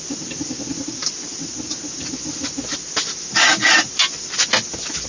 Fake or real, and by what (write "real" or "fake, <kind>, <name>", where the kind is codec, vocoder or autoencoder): real